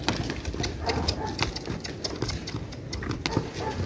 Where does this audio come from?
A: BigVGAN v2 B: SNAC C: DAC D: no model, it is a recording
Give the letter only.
D